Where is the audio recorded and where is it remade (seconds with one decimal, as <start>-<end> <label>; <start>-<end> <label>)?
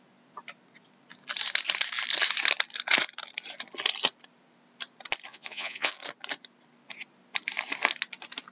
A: 0.0-5.3 recorded; 5.3-5.9 remade; 5.9-8.5 recorded